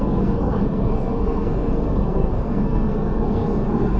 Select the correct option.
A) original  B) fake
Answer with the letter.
B